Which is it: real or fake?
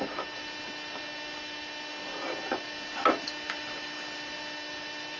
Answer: fake